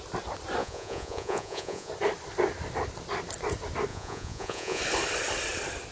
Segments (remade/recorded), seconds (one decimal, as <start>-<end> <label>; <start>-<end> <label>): 0.0-0.6 recorded; 0.6-1.9 remade; 1.9-3.9 recorded; 3.9-4.8 remade; 4.8-5.9 recorded